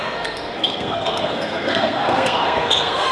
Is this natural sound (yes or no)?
no